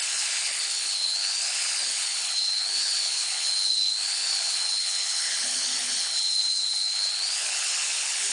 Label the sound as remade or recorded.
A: remade